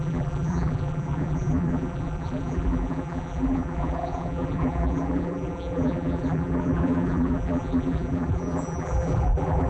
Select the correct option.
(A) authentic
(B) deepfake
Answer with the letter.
B